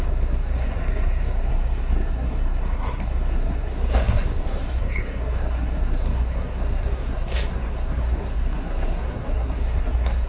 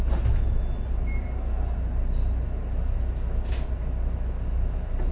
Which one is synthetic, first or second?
first